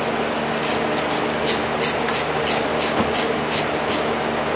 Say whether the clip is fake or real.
real